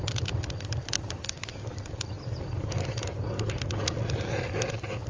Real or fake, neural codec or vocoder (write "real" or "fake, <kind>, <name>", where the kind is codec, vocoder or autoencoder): real